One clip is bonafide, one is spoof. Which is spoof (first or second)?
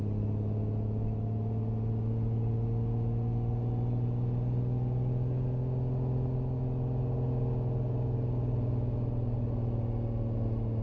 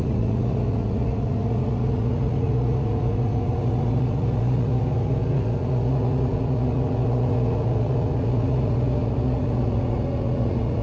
second